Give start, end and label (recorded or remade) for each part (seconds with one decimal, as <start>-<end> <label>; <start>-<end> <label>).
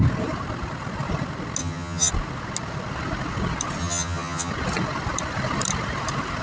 0.0-1.6 recorded; 1.6-2.1 remade; 2.1-3.8 recorded; 3.8-4.5 remade; 4.5-6.4 recorded